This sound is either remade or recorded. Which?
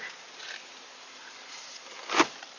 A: recorded